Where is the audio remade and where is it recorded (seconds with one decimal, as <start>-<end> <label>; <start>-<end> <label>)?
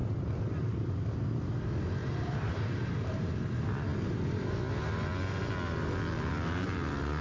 0.0-2.0 recorded; 2.0-3.3 remade; 3.3-7.2 recorded